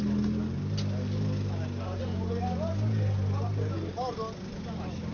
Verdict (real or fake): real